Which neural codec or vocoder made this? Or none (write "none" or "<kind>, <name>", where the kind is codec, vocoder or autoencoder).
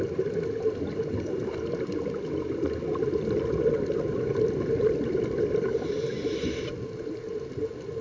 none